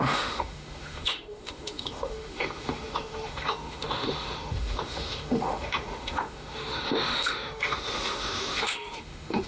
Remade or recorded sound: remade